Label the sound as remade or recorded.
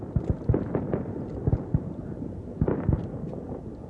recorded